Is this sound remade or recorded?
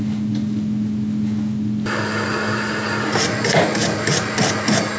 recorded